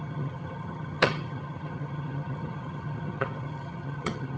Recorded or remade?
remade